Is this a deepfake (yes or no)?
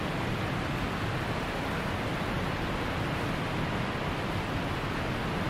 no